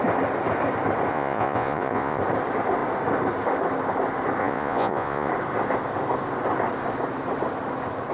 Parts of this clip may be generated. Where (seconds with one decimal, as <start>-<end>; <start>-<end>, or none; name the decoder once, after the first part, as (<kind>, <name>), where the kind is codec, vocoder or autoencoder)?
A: 1.1-2.2 (vocoder, Vocos); 4.4-5.3